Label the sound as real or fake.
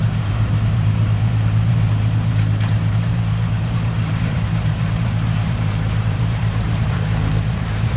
fake